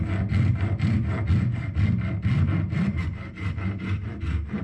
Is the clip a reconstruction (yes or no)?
no